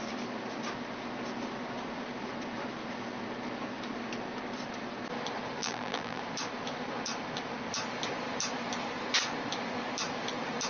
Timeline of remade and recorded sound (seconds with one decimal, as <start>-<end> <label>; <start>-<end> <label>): 0.0-5.6 recorded; 5.6-6.2 remade; 6.2-10.7 recorded